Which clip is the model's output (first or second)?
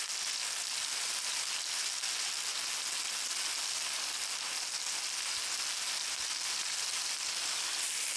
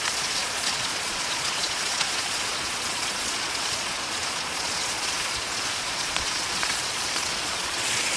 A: second